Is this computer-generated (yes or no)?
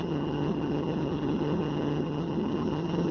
yes